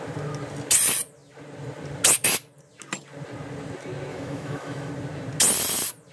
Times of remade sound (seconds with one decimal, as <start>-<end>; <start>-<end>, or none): 4.1-4.9